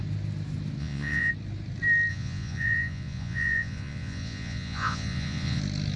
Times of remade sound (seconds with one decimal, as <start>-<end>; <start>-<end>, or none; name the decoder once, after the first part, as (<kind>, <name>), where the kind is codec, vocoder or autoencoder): 0.8-1.3 (vocoder, Vocos); 2.1-5.6